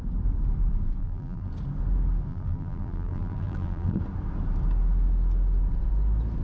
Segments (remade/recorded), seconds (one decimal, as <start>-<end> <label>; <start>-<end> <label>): 0.0-1.0 recorded; 1.0-1.5 remade; 1.5-2.3 recorded; 2.3-4.0 remade; 4.0-6.4 recorded